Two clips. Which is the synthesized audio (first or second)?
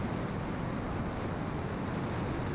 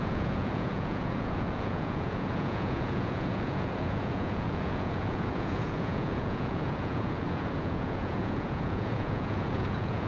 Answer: second